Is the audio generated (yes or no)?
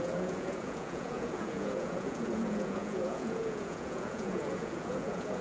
yes